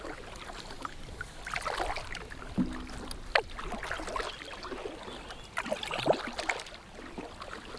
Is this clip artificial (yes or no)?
no